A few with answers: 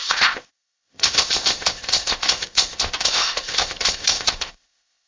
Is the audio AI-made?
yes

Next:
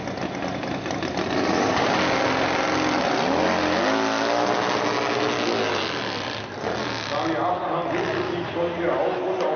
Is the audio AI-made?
no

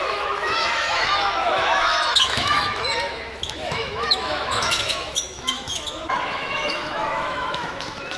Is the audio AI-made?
yes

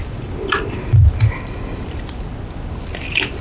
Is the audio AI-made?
yes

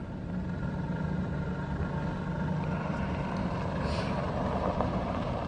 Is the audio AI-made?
no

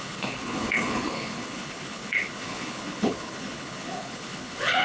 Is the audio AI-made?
yes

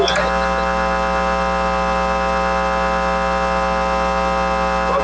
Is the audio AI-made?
no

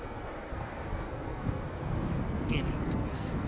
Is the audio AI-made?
yes